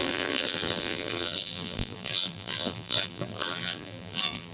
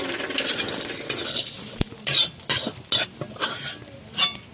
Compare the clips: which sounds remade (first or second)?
first